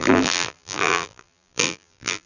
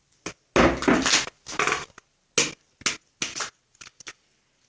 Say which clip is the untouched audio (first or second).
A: second